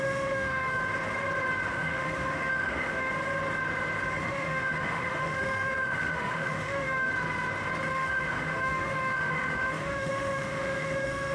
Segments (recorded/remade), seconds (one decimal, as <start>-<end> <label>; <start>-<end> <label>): 0.0-0.8 remade; 0.8-1.7 recorded; 1.7-3.1 remade; 3.1-4.2 recorded; 4.2-7.1 remade; 7.1-7.9 recorded; 7.9-11.3 remade